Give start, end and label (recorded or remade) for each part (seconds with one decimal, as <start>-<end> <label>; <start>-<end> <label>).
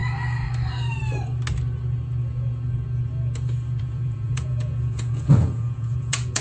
0.0-3.8 recorded; 3.8-6.4 remade